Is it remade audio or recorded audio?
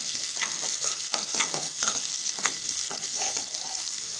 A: remade